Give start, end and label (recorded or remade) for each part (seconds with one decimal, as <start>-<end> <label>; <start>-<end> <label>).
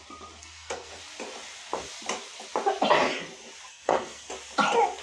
0.0-0.4 recorded; 0.4-1.0 remade; 1.0-3.7 recorded; 3.7-4.3 remade; 4.3-5.0 recorded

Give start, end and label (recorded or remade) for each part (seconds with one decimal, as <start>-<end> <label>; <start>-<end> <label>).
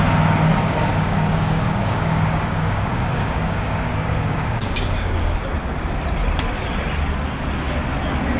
0.0-0.5 recorded; 0.5-5.5 remade; 5.5-8.4 recorded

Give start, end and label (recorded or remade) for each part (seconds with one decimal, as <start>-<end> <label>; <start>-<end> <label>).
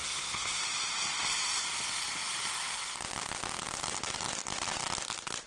0.0-0.6 remade; 0.6-5.5 recorded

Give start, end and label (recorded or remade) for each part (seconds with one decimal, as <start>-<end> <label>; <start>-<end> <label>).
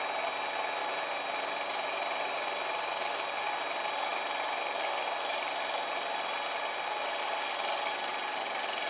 0.0-0.8 recorded; 0.8-3.5 remade; 3.5-8.1 recorded; 8.1-8.9 remade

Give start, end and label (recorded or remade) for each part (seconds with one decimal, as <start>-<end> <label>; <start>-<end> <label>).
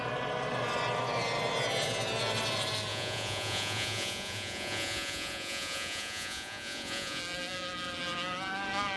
0.0-2.9 recorded; 2.9-7.2 remade; 7.2-9.0 recorded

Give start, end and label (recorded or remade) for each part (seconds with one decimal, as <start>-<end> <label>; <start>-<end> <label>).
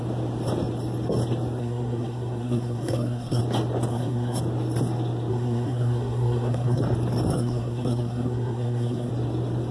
0.0-1.6 recorded; 1.6-3.4 remade; 3.4-3.9 recorded; 3.9-4.4 remade; 4.4-5.3 recorded; 5.3-6.8 remade; 6.8-7.3 recorded; 7.3-9.1 remade; 9.1-9.7 recorded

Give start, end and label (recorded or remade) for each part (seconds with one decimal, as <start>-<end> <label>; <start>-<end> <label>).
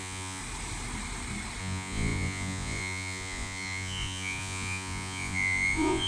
0.0-0.4 remade; 0.4-1.6 recorded; 1.6-6.1 remade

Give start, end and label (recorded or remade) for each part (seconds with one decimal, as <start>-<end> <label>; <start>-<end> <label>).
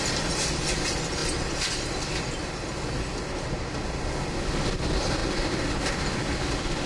0.0-6.9 recorded